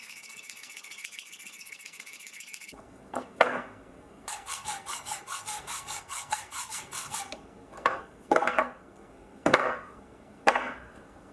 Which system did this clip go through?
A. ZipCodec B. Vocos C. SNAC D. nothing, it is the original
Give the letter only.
C